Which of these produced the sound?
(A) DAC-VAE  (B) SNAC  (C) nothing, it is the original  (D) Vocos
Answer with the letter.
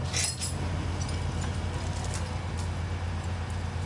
C